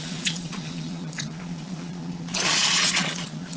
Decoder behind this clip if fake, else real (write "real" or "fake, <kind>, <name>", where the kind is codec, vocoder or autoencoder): fake, vocoder, Vocos